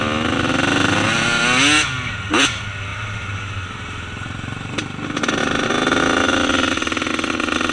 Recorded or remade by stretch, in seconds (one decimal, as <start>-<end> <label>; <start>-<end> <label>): 0.0-2.9 recorded; 2.9-5.7 remade; 5.7-7.7 recorded